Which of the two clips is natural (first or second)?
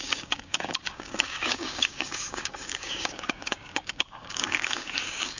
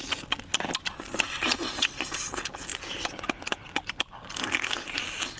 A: second